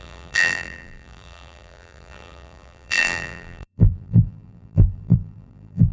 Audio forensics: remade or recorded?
remade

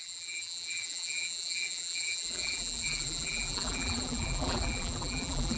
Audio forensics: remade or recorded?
remade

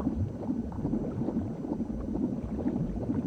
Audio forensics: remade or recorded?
recorded